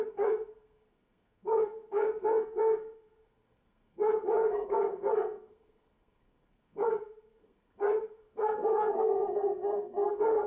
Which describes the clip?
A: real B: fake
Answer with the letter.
B